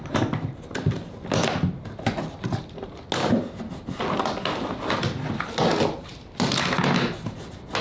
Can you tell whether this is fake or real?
real